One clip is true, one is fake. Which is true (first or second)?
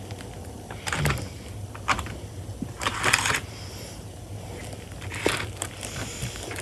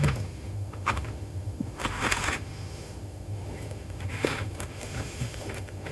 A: first